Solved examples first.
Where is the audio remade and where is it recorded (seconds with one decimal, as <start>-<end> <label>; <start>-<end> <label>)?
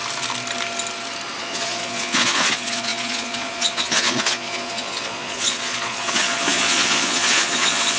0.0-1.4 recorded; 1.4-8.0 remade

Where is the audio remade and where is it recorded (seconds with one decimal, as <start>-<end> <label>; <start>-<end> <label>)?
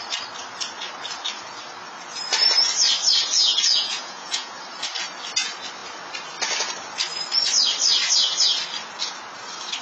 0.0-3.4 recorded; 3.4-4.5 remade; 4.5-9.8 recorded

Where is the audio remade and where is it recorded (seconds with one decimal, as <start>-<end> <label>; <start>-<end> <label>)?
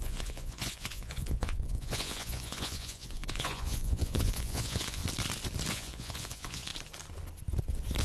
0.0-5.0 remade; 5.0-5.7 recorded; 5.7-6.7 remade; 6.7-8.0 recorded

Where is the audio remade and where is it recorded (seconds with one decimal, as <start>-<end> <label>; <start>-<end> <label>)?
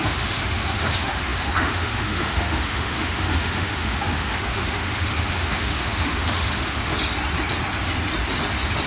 0.0-6.9 remade; 6.9-8.9 recorded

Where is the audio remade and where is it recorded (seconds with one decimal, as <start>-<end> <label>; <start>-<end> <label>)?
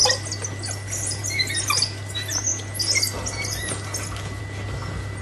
0.0-5.2 recorded